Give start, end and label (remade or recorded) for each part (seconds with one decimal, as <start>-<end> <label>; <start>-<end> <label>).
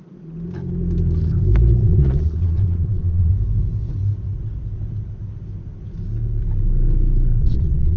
0.0-1.8 recorded; 1.8-3.3 remade; 3.3-7.4 recorded; 7.4-8.0 remade